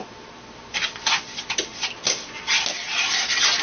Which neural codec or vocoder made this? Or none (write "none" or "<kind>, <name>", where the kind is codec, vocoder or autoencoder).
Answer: none